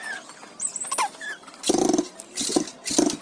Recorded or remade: remade